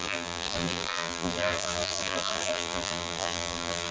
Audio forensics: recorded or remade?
remade